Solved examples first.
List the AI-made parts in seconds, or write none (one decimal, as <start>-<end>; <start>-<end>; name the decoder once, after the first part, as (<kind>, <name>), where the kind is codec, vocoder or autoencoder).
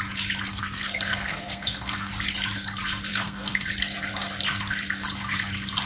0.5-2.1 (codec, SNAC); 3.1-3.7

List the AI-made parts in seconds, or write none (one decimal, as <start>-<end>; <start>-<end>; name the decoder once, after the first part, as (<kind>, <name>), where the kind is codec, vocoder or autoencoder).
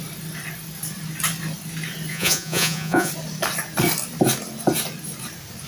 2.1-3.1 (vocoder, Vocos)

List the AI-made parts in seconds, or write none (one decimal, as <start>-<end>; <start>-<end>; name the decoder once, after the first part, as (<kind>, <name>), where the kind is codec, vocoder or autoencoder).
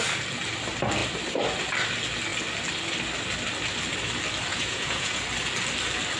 4.5-5.2 (vocoder, Vocos)